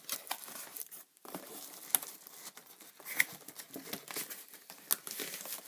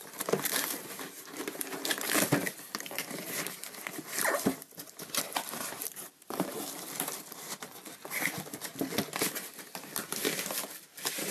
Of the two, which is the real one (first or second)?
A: first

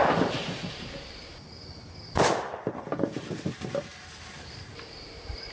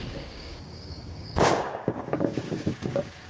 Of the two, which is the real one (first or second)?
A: first